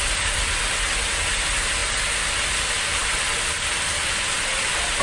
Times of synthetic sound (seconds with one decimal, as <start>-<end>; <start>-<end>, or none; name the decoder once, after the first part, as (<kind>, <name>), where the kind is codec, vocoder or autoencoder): none